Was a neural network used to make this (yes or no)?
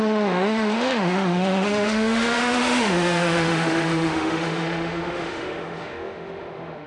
yes